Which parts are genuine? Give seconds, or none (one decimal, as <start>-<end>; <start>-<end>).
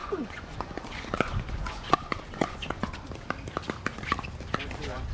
3.1-5.1